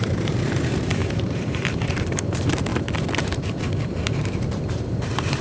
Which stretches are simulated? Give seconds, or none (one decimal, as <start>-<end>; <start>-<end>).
0.0-2.7; 3.2-5.4